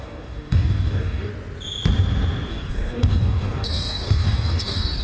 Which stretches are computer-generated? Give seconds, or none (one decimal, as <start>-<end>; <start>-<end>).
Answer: 0.0-1.3; 2.5-5.0